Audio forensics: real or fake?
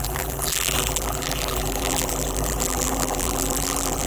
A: fake